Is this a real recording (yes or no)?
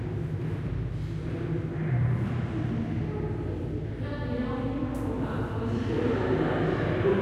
yes